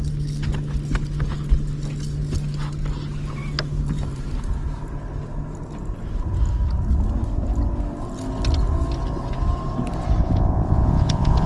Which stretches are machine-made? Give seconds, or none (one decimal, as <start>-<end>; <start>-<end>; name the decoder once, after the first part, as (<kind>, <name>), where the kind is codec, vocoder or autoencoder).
10.2-11.5 (vocoder, Vocos)